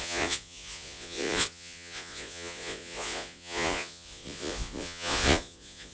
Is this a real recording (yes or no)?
no